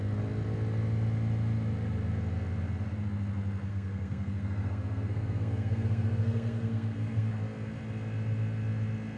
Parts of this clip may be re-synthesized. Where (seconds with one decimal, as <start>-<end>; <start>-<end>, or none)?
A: 3.7-7.3